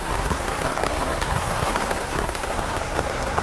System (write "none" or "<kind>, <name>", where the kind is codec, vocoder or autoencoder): codec, SNAC